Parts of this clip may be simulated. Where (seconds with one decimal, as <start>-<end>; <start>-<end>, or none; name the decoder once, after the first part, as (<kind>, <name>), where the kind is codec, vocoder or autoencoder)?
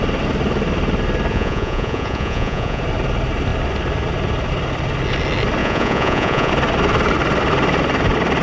1.3-2.8 (vocoder, Vocos); 5.6-6.5